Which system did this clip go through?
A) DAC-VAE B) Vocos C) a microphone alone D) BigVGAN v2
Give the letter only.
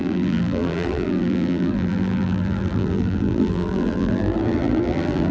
D